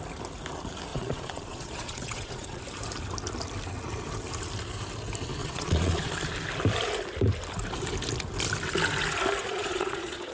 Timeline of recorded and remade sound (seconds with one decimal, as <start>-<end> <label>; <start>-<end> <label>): 0.0-0.9 recorded; 0.9-2.6 remade; 2.6-5.4 recorded; 5.4-6.1 remade; 6.1-9.4 recorded; 9.4-10.3 remade